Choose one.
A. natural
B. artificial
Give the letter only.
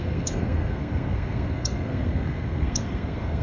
B